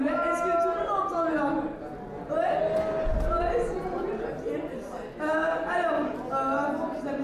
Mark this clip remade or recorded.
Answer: recorded